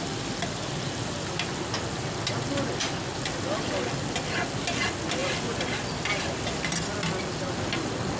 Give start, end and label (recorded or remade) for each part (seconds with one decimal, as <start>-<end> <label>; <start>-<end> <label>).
0.0-8.2 recorded